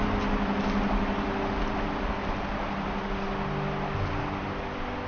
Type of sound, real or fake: real